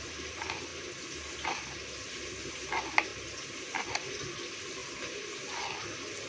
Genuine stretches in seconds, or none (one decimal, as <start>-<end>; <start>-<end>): 0.0-3.1; 3.7-6.3

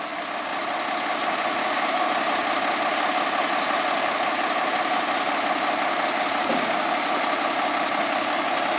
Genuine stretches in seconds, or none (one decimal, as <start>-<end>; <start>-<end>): 0.0-1.6; 2.1-6.4; 6.9-8.8